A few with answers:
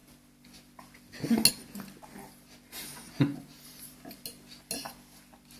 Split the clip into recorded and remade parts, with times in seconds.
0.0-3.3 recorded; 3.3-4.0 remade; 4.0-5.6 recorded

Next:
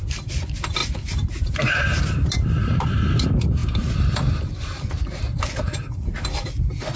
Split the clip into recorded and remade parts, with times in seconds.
0.0-7.0 recorded

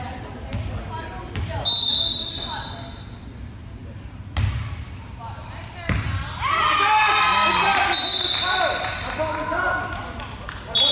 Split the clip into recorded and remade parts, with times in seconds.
0.0-2.1 recorded; 2.1-2.7 remade; 2.7-10.9 recorded

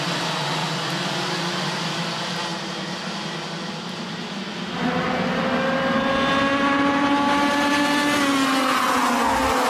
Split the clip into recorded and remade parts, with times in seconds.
0.0-9.7 recorded